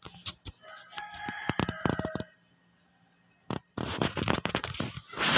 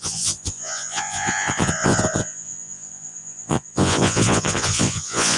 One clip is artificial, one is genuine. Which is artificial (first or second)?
second